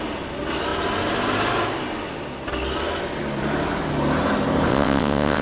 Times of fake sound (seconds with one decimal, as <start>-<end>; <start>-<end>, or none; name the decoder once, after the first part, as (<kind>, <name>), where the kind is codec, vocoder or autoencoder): 4.7-5.4 (vocoder, WaveNeXt)